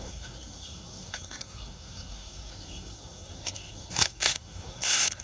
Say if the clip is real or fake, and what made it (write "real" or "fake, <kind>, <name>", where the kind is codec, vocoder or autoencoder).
fake, codec, SNAC